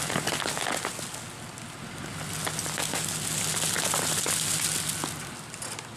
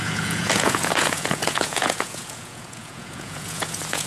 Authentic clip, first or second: first